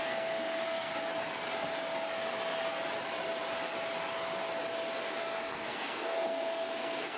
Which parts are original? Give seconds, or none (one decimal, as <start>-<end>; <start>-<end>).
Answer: 0.9-5.2